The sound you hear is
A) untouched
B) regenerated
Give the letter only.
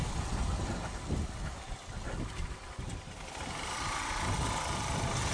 A